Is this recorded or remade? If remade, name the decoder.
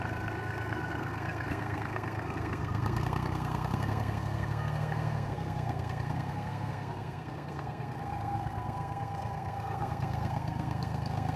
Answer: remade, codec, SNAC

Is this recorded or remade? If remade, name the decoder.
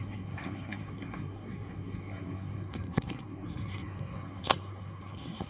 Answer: remade, codec, SNAC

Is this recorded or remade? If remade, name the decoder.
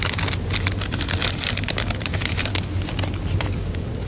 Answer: recorded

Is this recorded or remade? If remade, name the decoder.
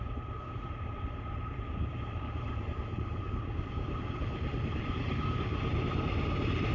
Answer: remade, vocoder, BigVGAN v2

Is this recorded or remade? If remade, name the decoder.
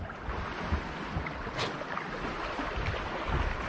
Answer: recorded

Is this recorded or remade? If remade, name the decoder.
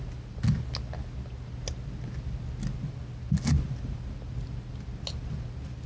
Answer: recorded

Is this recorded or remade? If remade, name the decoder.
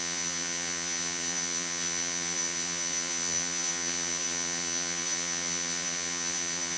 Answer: remade, vocoder, Vocos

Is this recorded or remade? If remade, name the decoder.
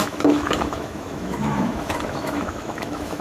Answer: remade, autoencoder, DAC-VAE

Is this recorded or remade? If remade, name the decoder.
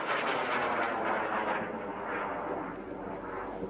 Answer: recorded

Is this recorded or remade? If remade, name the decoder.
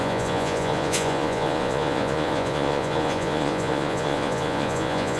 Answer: remade, vocoder, Vocos